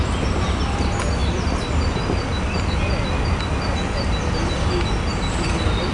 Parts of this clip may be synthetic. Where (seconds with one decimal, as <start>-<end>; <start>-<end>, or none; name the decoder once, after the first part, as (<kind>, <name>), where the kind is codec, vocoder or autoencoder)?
1.2-1.7 (vocoder, BigVGAN v2)